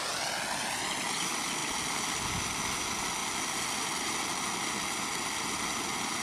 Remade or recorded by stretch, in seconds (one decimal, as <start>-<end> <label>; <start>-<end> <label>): 0.0-6.2 recorded